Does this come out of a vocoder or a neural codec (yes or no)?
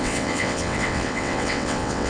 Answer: yes